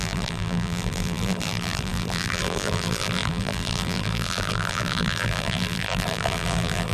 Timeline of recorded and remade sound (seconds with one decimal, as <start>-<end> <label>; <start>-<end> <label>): 0.0-6.9 remade